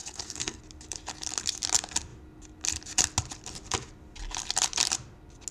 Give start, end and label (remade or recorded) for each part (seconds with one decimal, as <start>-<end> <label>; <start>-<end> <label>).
0.0-0.6 remade; 0.6-5.5 recorded